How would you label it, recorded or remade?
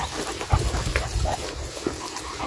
recorded